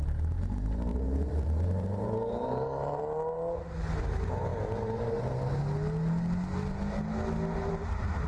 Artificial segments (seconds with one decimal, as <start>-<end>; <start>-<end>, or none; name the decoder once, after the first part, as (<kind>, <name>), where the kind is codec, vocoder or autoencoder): 0.9-3.0 (vocoder, BigVGAN v2)